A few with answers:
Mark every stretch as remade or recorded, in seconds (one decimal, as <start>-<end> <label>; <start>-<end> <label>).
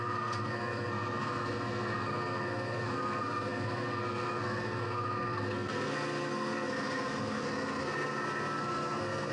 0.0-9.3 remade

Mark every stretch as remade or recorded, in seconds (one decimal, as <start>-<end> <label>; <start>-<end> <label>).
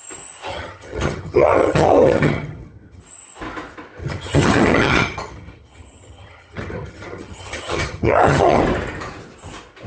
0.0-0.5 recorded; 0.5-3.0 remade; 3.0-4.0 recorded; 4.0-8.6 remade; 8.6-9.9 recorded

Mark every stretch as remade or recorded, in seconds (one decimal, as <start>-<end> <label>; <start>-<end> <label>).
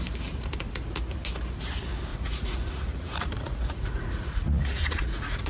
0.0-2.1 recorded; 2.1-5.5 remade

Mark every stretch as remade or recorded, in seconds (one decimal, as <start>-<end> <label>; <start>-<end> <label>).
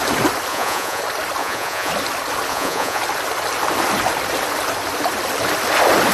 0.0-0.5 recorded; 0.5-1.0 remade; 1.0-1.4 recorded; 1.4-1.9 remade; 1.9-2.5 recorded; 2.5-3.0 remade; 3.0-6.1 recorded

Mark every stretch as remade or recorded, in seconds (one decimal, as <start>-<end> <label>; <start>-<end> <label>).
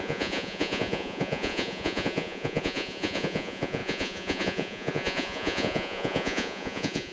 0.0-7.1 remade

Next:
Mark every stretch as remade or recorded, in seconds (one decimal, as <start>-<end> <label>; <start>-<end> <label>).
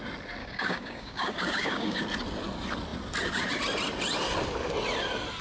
0.0-0.4 recorded; 0.4-2.0 remade; 2.0-5.4 recorded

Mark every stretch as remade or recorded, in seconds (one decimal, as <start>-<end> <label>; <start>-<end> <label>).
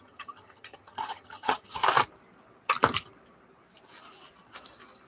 0.0-1.8 remade; 1.8-5.1 recorded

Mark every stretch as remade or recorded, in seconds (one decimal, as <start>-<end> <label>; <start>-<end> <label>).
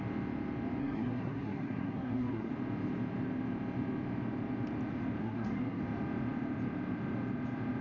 0.0-0.8 recorded; 0.8-2.5 remade; 2.5-5.2 recorded; 5.2-5.8 remade; 5.8-7.8 recorded